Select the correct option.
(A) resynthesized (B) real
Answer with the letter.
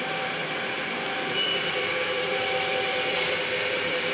A